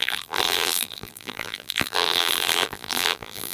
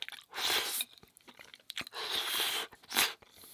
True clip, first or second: second